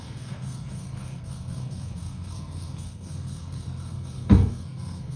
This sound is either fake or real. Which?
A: fake